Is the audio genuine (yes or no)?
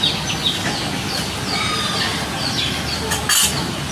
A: yes